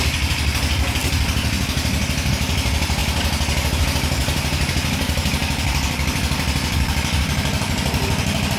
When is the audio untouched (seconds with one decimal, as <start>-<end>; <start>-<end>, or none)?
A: 1.0-2.3; 3.0-3.8; 4.2-4.7; 5.4-6.2

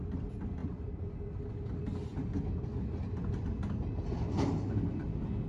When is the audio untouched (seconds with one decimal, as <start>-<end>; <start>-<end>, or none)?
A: 0.0-5.5

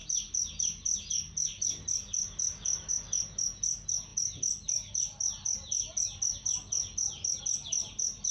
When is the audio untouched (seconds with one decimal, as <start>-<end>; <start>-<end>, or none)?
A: 0.0-8.3

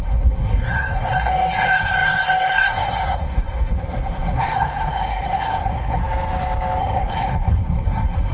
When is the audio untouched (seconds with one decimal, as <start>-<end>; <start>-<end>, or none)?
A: 6.0-6.8

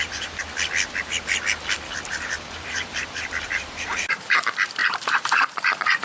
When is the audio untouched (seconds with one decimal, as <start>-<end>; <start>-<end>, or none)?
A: 0.4-2.1